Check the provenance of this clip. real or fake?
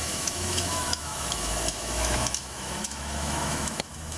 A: fake